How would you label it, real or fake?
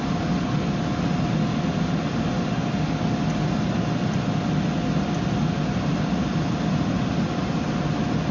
real